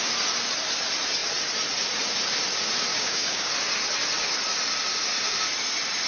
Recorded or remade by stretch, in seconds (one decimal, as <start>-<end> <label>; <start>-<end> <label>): 0.0-2.9 recorded; 2.9-3.5 remade; 3.5-6.1 recorded